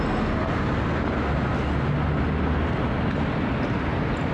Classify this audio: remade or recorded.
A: recorded